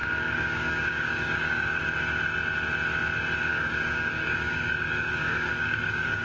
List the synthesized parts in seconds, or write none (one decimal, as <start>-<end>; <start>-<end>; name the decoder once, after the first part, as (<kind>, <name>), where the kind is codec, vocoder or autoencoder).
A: 0.0-1.8 (codec, DAC); 3.5-6.2